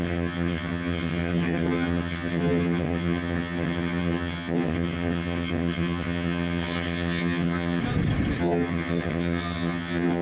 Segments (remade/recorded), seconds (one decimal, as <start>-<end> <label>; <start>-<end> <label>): 0.0-7.8 remade; 7.8-8.4 recorded; 8.4-10.2 remade

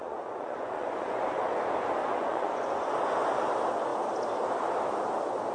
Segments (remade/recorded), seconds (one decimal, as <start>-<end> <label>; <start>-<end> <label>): 0.0-1.6 remade; 1.6-2.0 recorded; 2.0-2.9 remade; 2.9-5.5 recorded

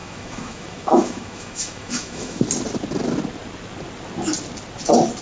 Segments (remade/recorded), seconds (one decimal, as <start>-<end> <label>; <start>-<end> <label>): 0.0-2.4 remade; 2.4-5.2 recorded

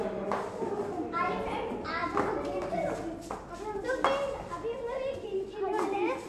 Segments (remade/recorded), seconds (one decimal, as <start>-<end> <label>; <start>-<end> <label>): 0.0-6.3 recorded